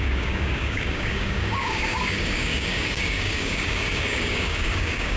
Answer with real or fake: fake